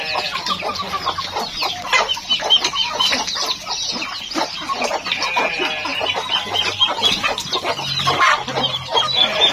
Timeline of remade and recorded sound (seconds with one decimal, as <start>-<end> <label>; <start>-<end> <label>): 0.0-9.5 recorded